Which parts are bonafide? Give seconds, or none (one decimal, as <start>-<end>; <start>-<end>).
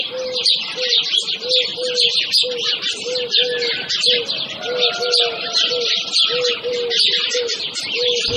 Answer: 0.0-8.4